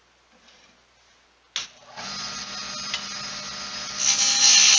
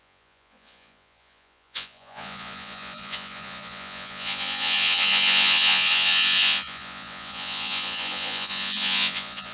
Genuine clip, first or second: first